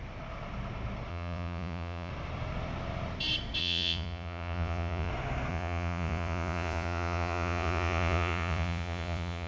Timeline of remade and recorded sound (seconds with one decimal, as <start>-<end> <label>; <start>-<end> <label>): 0.0-1.1 recorded; 1.1-2.1 remade; 2.1-3.6 recorded; 3.6-5.1 remade; 5.1-5.5 recorded; 5.5-9.5 remade

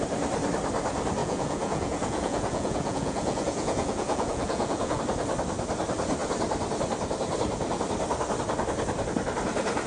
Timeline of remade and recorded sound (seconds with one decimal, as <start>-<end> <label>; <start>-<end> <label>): 0.0-1.2 recorded; 1.2-5.0 remade; 5.0-9.9 recorded

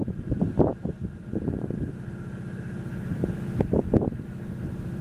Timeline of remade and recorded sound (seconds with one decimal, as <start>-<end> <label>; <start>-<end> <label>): 0.0-0.7 remade; 0.7-2.6 recorded; 2.6-3.2 remade; 3.2-4.6 recorded; 4.6-5.0 remade

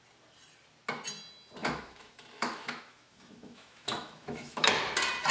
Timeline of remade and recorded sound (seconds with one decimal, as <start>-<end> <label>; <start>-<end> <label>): 0.0-1.6 recorded; 1.6-4.8 remade; 4.8-5.3 recorded

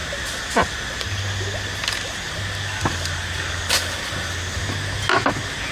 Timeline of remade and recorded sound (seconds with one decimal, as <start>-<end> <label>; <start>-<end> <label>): 0.0-5.7 recorded